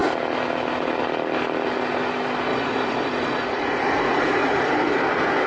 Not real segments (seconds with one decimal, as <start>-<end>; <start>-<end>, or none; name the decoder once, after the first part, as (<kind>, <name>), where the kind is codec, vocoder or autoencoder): 2.5-5.0 (vocoder, Vocos)